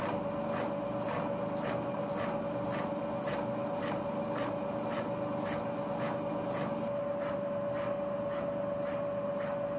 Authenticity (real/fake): real